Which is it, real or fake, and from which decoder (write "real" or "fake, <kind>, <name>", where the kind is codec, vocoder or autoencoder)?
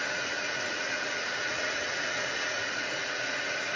fake, vocoder, Vocos